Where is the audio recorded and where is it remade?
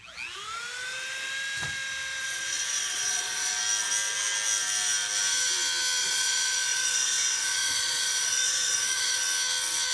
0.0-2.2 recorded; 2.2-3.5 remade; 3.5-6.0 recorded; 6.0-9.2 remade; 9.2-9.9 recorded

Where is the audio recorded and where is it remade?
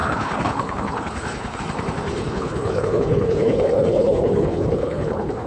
0.0-1.6 remade; 1.6-2.1 recorded; 2.1-5.5 remade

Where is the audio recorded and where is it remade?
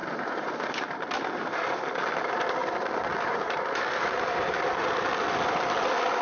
0.0-1.8 remade; 1.8-2.6 recorded; 2.6-4.8 remade; 4.8-6.2 recorded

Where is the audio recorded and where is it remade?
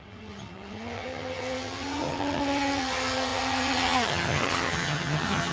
0.0-5.5 remade